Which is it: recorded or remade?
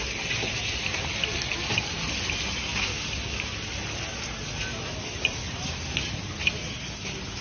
recorded